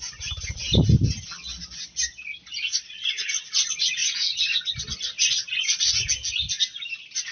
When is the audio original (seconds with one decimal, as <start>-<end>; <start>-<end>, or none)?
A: 0.0-7.3